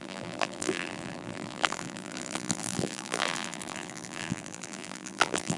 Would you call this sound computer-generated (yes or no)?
yes